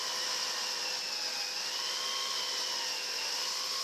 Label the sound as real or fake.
real